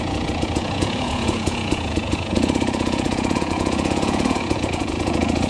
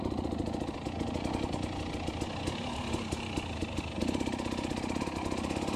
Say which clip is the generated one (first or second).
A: first